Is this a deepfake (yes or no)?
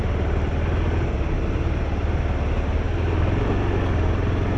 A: no